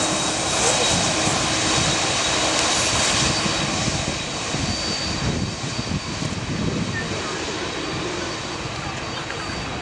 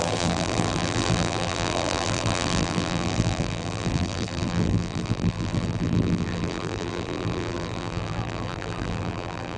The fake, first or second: second